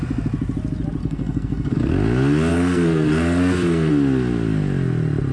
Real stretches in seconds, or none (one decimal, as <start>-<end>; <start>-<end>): 0.0-1.0; 1.9-2.5; 3.9-5.3